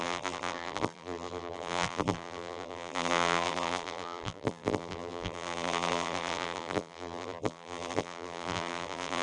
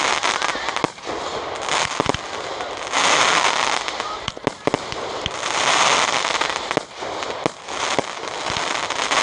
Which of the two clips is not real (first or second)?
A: first